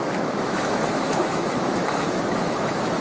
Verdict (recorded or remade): remade